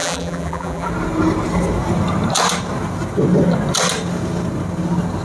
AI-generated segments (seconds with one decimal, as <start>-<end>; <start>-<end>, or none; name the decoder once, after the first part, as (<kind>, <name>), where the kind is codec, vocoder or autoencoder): 0.0-0.9 (vocoder, BigVGAN v2)